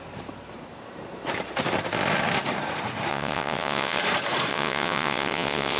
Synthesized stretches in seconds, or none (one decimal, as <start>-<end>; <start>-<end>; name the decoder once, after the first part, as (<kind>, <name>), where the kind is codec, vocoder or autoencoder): 3.1-4.0 (vocoder, WaveNeXt); 4.5-5.8